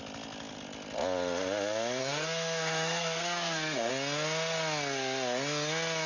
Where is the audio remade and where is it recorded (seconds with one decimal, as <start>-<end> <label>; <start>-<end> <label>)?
0.0-2.0 recorded; 2.0-3.9 remade; 3.9-6.1 recorded